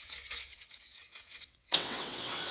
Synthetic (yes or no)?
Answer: yes